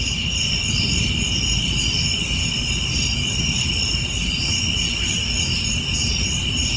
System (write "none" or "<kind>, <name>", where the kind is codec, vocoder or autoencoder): none